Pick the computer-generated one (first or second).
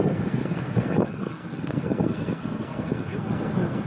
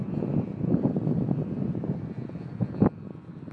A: first